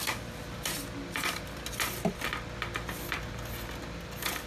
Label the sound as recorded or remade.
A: recorded